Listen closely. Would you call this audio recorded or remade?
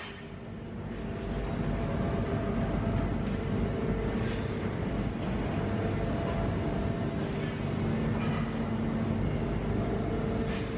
recorded